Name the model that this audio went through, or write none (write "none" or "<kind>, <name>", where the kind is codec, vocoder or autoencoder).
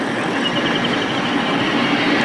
none